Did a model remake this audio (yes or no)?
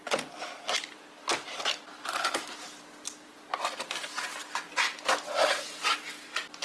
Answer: no